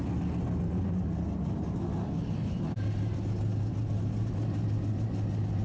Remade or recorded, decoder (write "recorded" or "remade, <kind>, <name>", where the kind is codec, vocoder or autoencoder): recorded